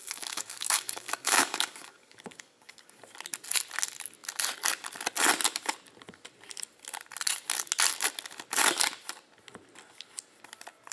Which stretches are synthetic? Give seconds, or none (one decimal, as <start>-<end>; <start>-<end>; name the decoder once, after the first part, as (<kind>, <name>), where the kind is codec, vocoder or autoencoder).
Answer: 0.0-3.0 (codec, DAC)